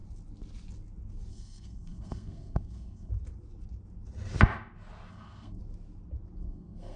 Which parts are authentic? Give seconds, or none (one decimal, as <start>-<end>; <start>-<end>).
0.0-1.3; 3.1-5.1; 5.6-6.4